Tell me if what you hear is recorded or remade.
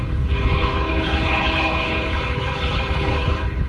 remade